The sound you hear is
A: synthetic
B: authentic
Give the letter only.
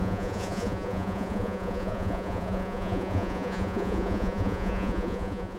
A